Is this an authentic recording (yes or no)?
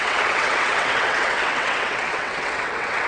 no